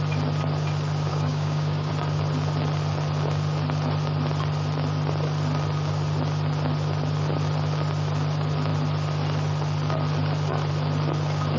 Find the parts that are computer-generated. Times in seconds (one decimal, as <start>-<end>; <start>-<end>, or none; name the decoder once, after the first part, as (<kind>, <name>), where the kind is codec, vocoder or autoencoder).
1.1-1.9 (codec, DAC)